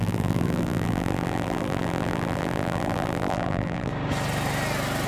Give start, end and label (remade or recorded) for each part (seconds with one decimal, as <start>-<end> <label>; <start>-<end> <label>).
0.0-3.9 remade; 3.9-5.1 recorded